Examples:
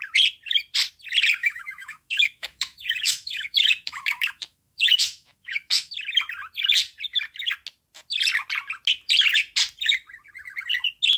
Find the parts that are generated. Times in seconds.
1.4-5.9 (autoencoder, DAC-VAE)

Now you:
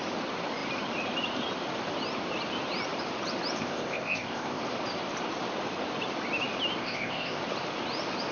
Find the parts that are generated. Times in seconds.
3.6-4.6 (codec, ZipCodec); 6.8-7.4

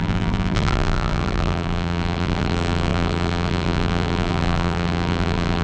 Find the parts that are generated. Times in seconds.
0.0-5.6 (vocoder, BigVGAN v2)